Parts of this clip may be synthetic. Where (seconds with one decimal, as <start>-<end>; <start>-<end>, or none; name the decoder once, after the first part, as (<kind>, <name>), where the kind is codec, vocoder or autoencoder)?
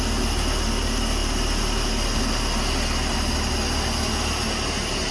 none